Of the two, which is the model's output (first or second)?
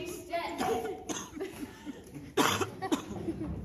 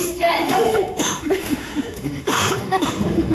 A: second